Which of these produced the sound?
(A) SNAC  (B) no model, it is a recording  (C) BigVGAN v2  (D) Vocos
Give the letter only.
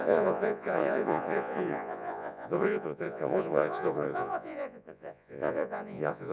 D